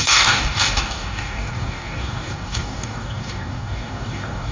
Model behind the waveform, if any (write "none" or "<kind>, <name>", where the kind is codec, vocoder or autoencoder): codec, DAC